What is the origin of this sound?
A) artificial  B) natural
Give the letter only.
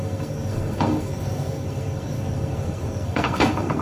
A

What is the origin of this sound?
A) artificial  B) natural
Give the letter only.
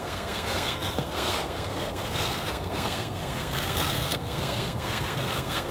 A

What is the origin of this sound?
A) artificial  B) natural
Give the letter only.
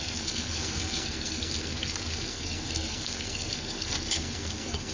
A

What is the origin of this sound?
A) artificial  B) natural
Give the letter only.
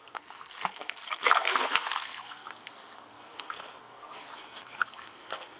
A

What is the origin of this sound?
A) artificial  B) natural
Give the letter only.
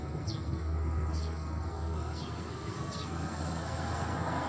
A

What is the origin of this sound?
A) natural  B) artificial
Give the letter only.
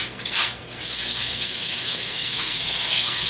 B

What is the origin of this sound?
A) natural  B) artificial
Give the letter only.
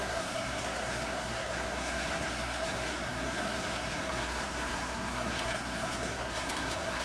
B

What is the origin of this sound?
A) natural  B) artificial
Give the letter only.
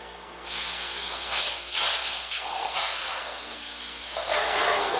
B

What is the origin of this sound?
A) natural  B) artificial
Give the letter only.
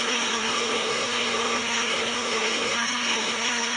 B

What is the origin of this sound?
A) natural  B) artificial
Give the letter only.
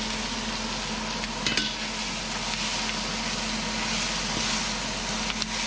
A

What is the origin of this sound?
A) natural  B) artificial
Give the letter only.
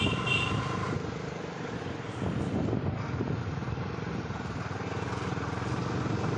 A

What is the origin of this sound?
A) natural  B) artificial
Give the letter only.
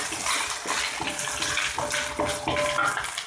A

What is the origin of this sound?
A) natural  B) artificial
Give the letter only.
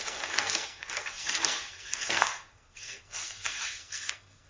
B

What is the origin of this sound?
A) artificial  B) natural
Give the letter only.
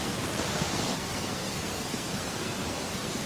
A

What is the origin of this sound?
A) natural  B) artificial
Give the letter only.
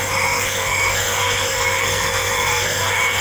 B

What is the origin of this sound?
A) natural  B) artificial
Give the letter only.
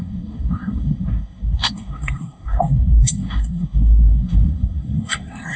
B